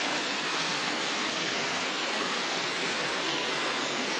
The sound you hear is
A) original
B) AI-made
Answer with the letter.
B